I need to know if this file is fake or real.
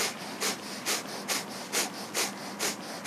real